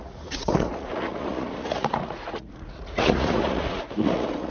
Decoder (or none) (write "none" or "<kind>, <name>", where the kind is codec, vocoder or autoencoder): vocoder, Vocos